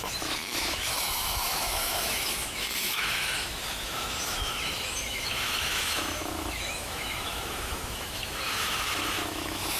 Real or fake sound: fake